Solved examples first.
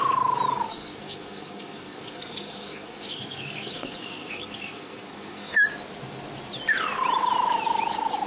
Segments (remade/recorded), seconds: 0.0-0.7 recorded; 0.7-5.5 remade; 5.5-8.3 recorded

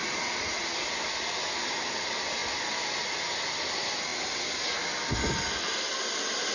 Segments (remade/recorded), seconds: 0.0-1.1 recorded; 1.1-2.4 remade; 2.4-3.6 recorded; 3.6-4.1 remade; 4.1-6.1 recorded; 6.1-6.5 remade

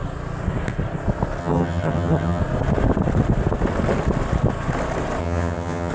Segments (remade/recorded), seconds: 0.0-1.4 recorded; 1.4-2.4 remade; 2.4-5.2 recorded; 5.2-5.9 remade

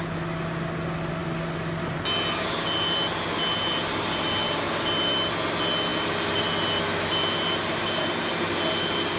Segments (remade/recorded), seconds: 0.0-9.2 recorded

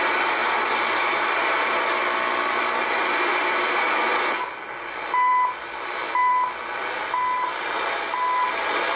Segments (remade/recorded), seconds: 0.0-9.0 recorded

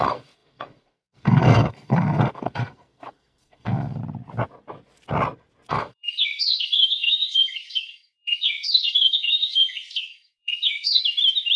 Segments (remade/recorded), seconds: 0.0-4.0 remade; 4.0-5.7 recorded; 5.7-11.0 remade; 11.0-11.6 recorded